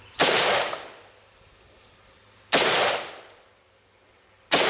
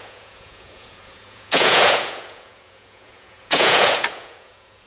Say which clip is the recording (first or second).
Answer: first